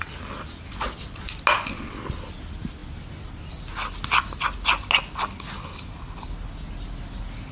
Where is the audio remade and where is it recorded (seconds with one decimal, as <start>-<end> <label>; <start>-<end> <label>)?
0.0-7.5 recorded